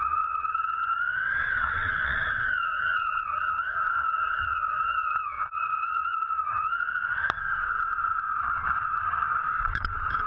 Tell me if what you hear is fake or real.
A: fake